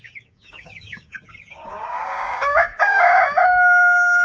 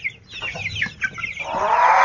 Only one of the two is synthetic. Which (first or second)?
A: first